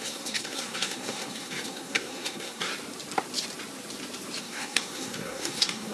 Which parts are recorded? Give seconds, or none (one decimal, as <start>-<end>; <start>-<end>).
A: 2.7-4.4